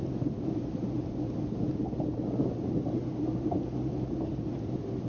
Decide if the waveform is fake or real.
real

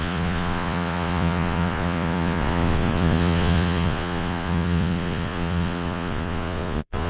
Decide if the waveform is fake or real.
fake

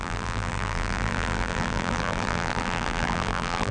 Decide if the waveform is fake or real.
fake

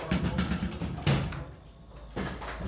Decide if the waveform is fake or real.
real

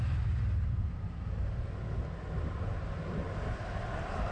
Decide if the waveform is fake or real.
real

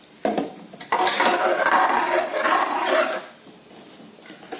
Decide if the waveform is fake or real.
real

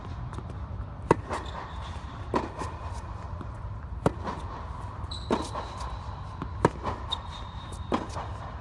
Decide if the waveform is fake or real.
fake